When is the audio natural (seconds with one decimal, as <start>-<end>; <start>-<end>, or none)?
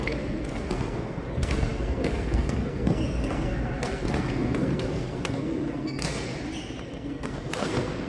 6.3-6.8